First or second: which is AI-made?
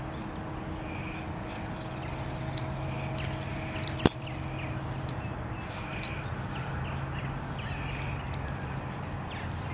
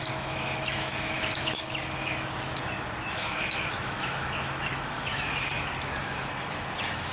second